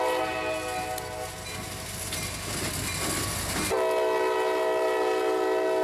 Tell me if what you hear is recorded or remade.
recorded